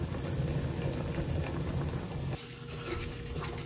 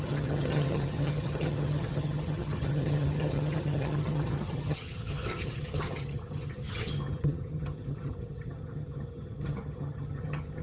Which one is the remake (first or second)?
second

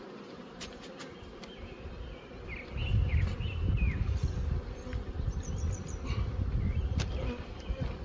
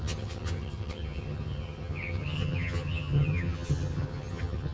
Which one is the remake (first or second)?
second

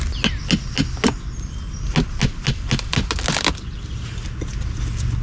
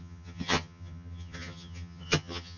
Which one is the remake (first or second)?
second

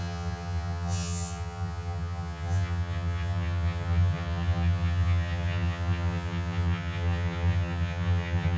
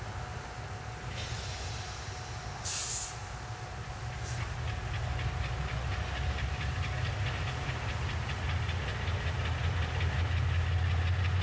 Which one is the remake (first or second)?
first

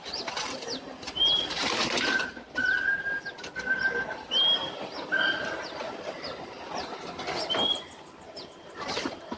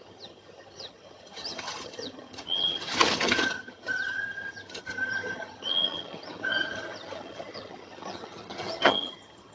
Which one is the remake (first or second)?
second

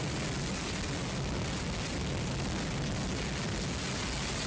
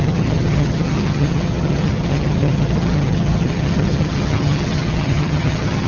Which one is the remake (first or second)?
second